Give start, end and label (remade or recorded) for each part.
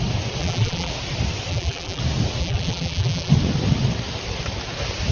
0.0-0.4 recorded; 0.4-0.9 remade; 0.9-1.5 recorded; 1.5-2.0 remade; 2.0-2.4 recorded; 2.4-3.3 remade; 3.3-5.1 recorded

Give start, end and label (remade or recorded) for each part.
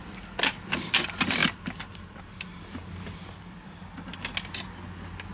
0.0-1.4 recorded; 1.4-3.8 remade; 3.8-5.3 recorded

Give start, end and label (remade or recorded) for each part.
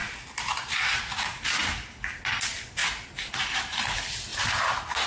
0.0-2.8 recorded; 2.8-3.3 remade; 3.3-4.3 recorded; 4.3-5.1 remade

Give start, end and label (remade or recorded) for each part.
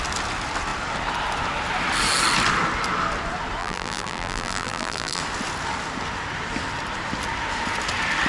0.0-3.6 recorded; 3.6-5.2 remade; 5.2-8.3 recorded